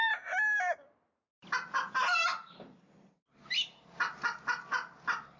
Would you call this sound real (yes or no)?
yes